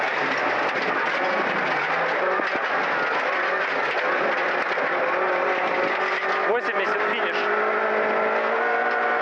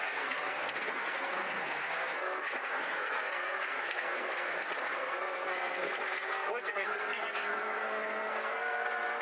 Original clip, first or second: first